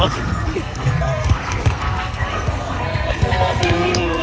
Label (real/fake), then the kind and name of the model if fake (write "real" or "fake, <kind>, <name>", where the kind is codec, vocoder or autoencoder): fake, codec, SNAC